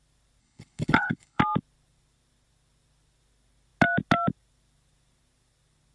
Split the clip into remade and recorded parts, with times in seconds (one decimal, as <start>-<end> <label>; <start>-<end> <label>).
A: 0.0-0.4 recorded; 0.4-1.4 remade; 1.4-5.9 recorded